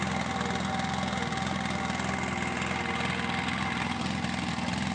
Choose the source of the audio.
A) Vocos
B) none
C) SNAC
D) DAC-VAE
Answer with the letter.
B